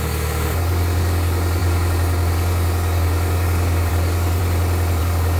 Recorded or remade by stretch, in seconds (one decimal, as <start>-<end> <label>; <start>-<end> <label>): 0.0-4.4 remade; 4.4-5.0 recorded; 5.0-5.4 remade